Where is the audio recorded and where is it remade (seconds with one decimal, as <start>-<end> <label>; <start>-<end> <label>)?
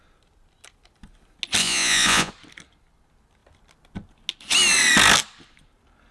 0.0-1.6 recorded; 1.6-2.3 remade; 2.3-6.1 recorded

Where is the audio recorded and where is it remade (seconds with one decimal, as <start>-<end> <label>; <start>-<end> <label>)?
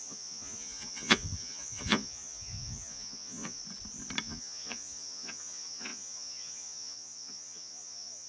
0.0-3.6 remade; 3.6-4.2 recorded; 4.2-8.3 remade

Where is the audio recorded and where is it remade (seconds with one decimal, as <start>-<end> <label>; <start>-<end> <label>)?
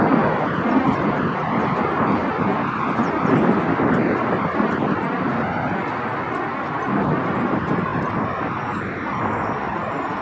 0.0-10.2 recorded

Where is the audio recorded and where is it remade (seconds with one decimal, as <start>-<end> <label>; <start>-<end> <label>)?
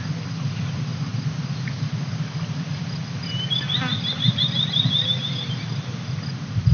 0.0-6.7 recorded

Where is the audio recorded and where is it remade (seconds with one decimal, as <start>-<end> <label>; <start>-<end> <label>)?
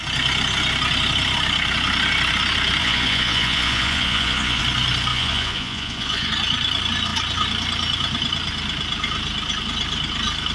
0.0-2.8 recorded; 2.8-4.6 remade; 4.6-5.1 recorded; 5.1-6.3 remade; 6.3-10.5 recorded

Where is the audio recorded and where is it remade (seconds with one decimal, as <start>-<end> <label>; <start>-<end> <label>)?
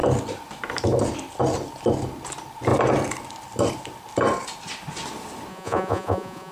0.0-5.5 recorded; 5.5-6.5 remade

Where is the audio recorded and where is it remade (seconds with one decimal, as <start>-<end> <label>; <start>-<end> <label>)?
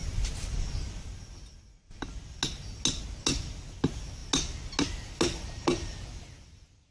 0.0-6.9 recorded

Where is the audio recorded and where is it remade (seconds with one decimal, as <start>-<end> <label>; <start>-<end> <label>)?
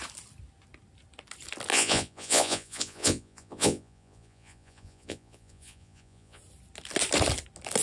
0.0-1.7 recorded; 1.7-6.4 remade; 6.4-7.8 recorded